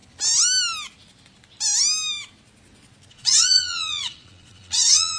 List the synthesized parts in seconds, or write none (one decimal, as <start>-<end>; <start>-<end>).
3.1-5.2